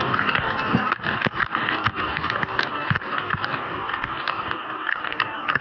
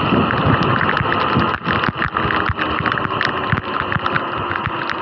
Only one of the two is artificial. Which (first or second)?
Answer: first